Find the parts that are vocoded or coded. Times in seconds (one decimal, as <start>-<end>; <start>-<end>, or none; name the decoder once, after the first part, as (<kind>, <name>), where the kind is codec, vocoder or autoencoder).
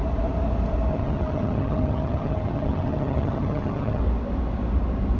0.9-4.0 (vocoder, HiFi-GAN)